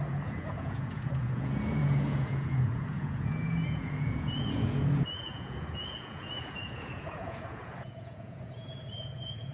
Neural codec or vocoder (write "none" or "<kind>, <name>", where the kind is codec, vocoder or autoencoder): vocoder, Vocos